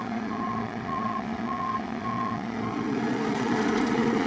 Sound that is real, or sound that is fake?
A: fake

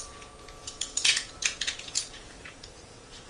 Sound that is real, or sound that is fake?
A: fake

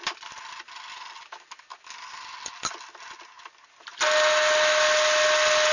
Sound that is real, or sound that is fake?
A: real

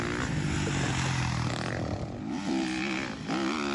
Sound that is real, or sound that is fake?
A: real